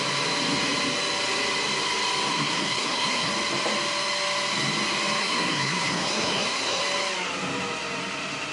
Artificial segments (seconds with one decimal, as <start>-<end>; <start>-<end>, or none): 2.3-3.3; 5.2-6.8